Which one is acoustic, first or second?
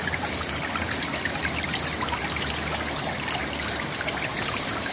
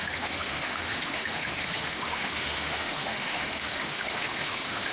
first